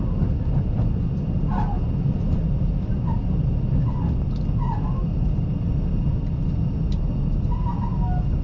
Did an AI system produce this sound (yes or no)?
no